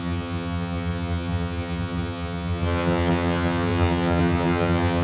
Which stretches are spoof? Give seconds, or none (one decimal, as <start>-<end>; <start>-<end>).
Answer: 0.0-5.0

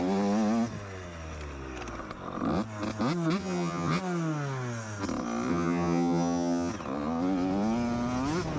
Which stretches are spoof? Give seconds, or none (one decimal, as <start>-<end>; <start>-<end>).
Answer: 3.4-4.0; 5.5-6.7